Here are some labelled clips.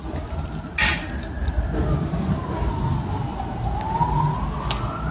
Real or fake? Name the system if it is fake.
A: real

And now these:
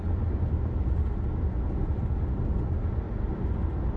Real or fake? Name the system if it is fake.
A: real